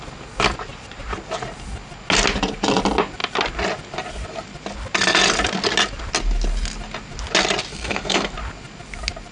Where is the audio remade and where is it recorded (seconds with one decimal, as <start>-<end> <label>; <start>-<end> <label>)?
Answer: 0.0-7.7 recorded; 7.7-8.3 remade; 8.3-9.3 recorded